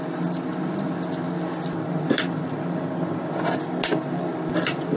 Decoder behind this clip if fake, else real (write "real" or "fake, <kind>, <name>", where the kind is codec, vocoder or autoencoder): real